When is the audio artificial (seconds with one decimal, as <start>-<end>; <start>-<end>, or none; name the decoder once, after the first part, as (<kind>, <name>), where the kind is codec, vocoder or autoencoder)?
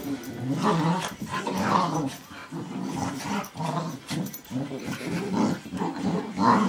none